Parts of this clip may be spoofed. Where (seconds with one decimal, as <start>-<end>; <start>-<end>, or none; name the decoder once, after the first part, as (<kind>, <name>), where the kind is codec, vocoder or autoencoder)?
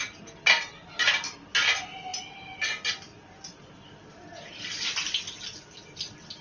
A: none